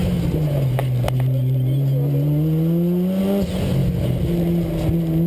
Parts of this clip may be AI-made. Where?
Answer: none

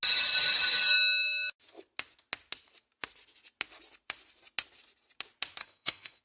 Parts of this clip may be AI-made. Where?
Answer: 5.6-6.2 (codec, SNAC)

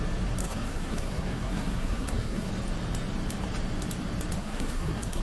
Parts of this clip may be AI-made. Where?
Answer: 0.4-2.5 (codec, SNAC); 4.4-5.2

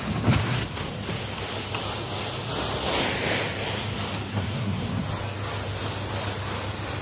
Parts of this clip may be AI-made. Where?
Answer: 0.4-0.9 (codec, SNAC); 4.3-5.0